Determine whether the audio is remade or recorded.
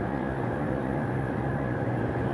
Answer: remade